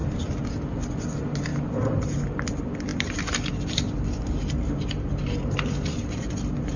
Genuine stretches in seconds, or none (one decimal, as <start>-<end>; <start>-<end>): 0.0-1.5; 2.0-2.9; 4.3-5.2; 6.3-6.8